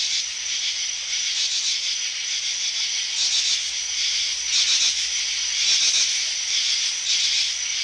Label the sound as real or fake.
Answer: real